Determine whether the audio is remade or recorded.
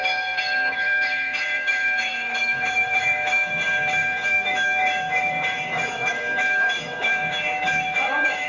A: remade